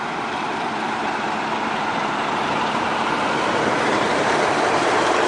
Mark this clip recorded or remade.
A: remade